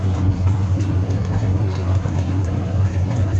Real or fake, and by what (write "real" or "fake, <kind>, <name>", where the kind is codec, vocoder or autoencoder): fake, codec, SNAC